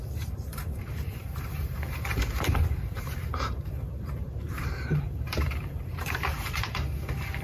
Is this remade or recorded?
remade